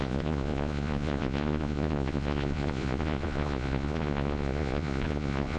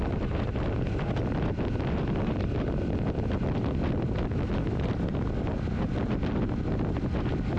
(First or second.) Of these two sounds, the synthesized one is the first